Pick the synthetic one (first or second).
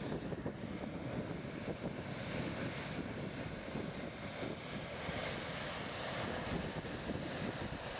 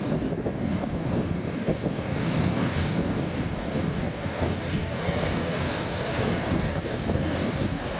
second